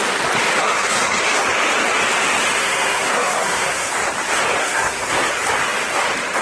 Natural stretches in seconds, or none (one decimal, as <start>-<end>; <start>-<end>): 0.0-0.6; 1.2-2.6; 3.9-4.6; 5.3-6.4